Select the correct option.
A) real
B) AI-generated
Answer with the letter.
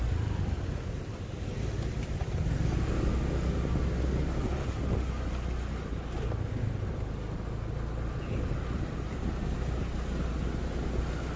A